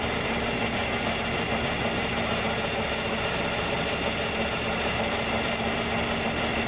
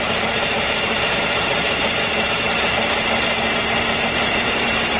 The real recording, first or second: first